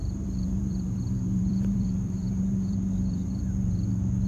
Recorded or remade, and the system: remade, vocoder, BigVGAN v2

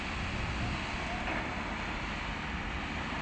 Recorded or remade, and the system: recorded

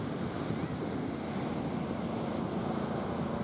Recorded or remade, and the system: recorded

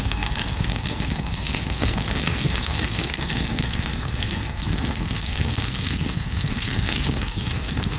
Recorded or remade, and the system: remade, codec, SNAC